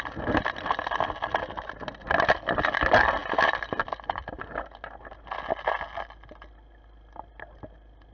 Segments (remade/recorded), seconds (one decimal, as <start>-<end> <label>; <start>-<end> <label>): 0.0-8.1 recorded